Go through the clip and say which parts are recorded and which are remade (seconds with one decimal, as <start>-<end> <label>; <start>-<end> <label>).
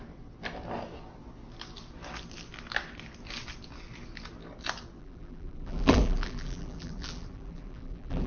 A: 0.0-5.0 recorded; 5.0-8.3 remade